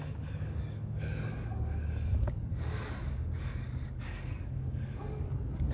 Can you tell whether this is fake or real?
fake